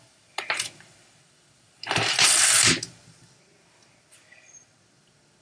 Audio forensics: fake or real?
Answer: real